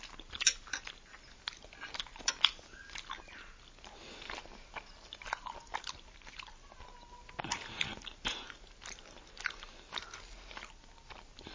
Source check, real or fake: real